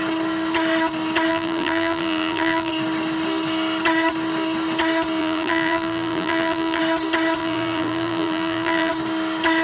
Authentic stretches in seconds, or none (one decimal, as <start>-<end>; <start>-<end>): 0.0-1.3; 2.7-5.2; 6.8-7.4; 8.9-9.6